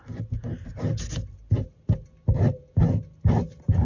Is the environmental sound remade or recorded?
recorded